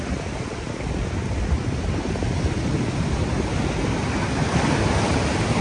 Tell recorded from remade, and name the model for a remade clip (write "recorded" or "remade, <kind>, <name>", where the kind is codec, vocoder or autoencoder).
recorded